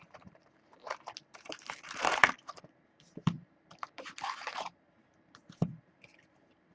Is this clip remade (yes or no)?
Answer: yes